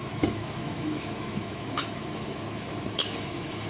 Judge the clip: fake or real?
fake